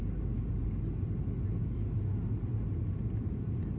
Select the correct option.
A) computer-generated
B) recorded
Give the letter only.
B